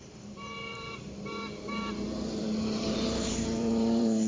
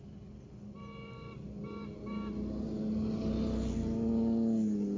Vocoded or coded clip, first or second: first